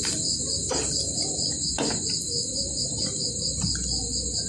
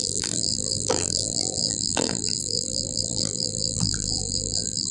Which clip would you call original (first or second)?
first